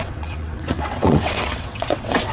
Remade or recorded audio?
remade